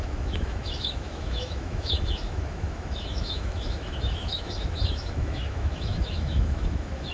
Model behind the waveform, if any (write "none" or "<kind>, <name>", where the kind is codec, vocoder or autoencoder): autoencoder, DAC-VAE